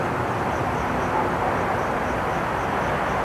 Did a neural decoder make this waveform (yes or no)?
no